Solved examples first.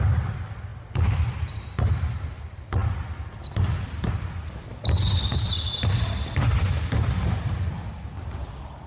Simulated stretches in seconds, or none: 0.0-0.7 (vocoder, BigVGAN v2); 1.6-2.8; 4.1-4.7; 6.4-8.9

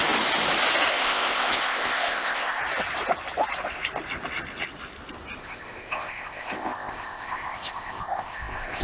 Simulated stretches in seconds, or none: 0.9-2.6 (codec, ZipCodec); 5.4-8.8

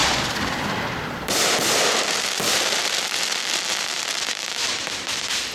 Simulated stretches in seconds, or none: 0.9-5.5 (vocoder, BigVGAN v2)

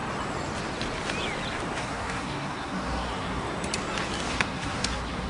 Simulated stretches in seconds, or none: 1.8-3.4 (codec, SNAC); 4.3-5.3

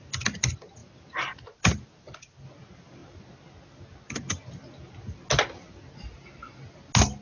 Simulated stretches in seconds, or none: none

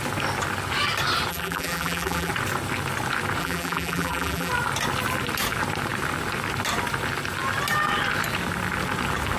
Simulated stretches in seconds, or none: 1.3-2.3 (vocoder, BigVGAN v2); 3.4-4.5